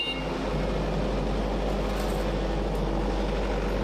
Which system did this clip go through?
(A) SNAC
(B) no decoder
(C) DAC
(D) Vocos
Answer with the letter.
B